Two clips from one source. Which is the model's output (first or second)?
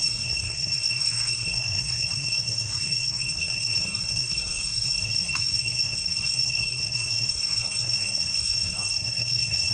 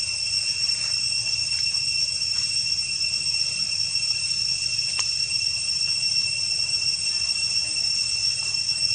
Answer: first